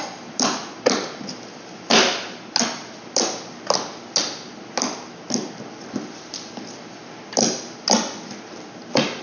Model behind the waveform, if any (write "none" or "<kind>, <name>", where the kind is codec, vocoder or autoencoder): none